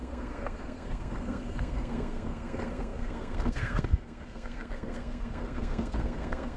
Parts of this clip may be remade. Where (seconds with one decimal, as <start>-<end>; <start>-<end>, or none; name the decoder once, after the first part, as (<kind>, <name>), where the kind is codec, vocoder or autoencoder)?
0.0-6.6 (codec, SNAC)